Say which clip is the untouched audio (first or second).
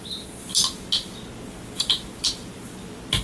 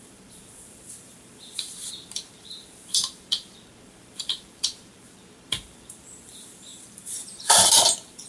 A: first